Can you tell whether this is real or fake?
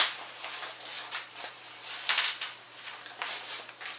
real